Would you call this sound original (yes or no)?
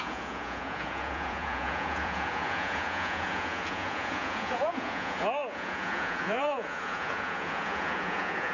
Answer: no